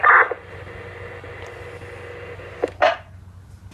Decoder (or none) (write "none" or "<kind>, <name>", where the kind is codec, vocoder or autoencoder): none